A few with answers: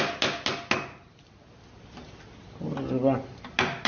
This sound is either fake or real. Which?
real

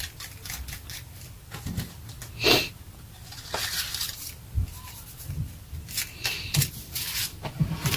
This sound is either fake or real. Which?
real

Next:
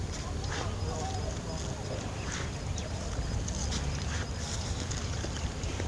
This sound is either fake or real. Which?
real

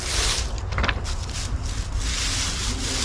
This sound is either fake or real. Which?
real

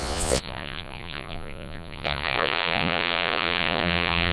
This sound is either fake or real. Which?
fake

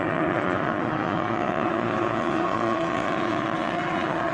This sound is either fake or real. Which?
fake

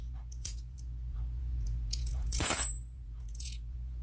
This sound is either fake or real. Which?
fake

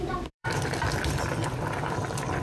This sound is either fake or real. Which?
fake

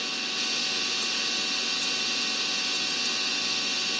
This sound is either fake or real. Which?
real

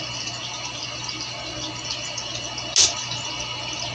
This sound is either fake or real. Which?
real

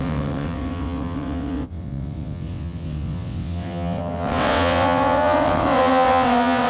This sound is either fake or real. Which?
fake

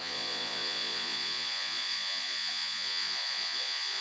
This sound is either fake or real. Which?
fake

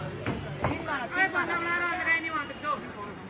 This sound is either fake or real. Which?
real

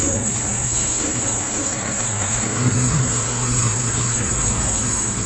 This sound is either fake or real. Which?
fake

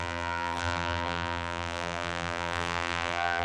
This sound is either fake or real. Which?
fake